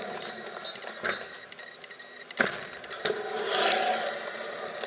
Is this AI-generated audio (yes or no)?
no